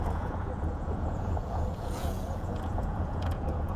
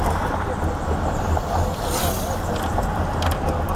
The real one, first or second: second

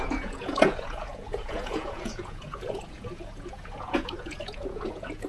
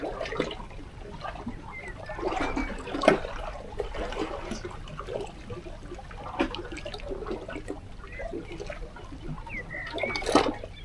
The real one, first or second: second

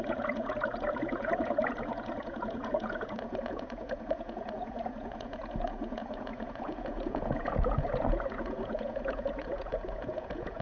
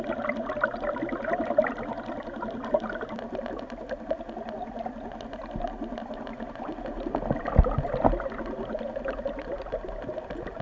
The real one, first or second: second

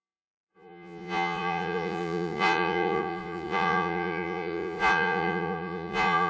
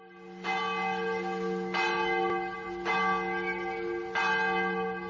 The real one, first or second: second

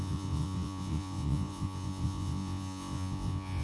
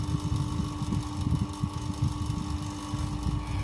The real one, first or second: second